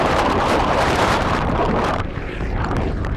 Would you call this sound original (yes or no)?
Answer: no